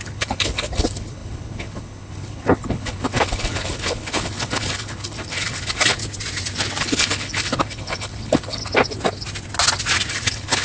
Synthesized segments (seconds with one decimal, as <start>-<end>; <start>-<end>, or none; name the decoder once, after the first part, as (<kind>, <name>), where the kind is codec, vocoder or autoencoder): 0.0-6.0 (codec, HILCodec); 6.8-8.6; 10.1-10.6